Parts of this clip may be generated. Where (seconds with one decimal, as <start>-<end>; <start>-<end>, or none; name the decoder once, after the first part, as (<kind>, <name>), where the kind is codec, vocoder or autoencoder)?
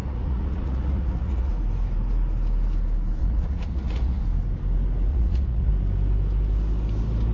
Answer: 0.0-1.5 (vocoder, Vocos); 3.2-4.2; 5.1-5.7